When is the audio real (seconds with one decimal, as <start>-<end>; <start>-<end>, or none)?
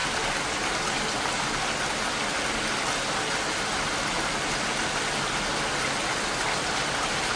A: 0.0-7.4